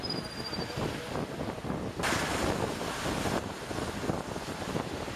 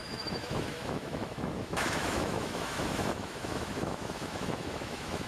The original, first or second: first